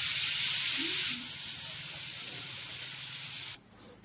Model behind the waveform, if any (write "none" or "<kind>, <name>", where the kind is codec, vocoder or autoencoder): none